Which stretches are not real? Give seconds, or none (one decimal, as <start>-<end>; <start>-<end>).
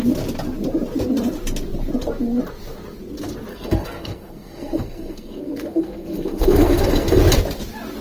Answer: 3.5-7.2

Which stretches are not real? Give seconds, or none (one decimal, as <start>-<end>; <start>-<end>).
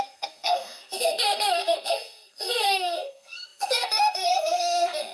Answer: 0.0-5.1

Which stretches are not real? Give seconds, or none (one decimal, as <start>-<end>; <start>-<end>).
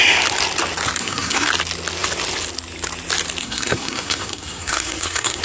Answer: 1.0-1.5; 3.4-5.4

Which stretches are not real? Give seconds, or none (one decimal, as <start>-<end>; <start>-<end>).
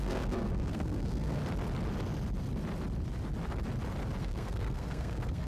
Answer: 0.0-1.4; 4.2-5.5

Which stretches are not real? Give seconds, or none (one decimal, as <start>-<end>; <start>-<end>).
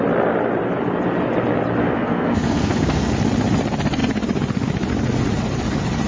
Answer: 1.8-3.1